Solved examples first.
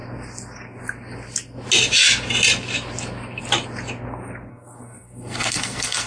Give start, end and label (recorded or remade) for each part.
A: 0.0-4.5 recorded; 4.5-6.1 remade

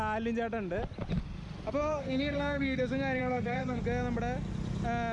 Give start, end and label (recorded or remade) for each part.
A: 0.0-1.8 recorded; 1.8-2.8 remade; 2.8-3.2 recorded; 3.2-3.8 remade; 3.8-5.1 recorded

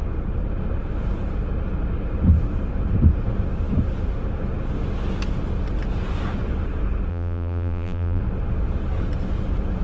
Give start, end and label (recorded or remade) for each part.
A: 0.0-7.1 recorded; 7.1-8.2 remade; 8.2-9.8 recorded

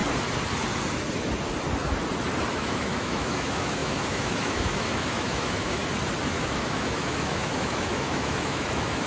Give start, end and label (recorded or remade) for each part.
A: 0.0-2.5 recorded; 2.5-5.8 remade; 5.8-6.3 recorded; 6.3-9.1 remade

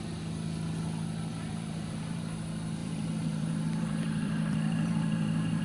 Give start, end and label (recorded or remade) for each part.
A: 0.0-1.3 recorded; 1.3-2.2 remade; 2.2-2.8 recorded; 2.8-5.6 remade

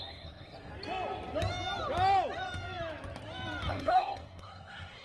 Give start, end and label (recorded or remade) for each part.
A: 0.0-0.7 remade; 0.7-3.7 recorded; 3.7-5.0 remade

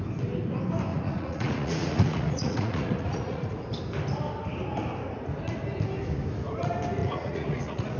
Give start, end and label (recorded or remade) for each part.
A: 0.0-0.9 recorded; 0.9-3.6 remade; 3.6-7.0 recorded; 7.0-8.0 remade